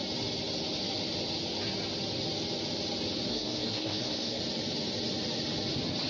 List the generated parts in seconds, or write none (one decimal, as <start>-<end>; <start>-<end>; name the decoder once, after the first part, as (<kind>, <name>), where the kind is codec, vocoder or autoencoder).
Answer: 3.3-4.4 (codec, SNAC)